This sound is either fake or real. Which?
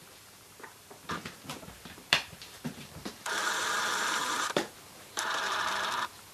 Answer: fake